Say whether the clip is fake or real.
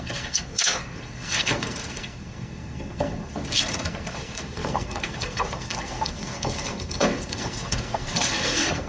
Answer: fake